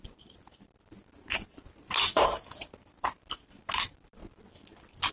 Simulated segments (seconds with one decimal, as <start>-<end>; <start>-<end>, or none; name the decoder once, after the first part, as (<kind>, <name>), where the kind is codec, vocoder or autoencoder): 0.0-4.2 (vocoder, BigVGAN v2)